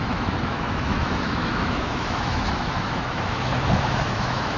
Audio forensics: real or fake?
fake